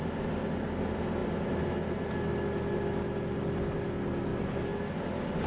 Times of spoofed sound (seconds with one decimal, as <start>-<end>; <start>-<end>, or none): none